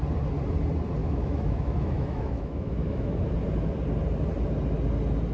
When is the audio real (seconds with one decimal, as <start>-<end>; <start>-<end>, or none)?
0.0-1.0; 3.2-5.3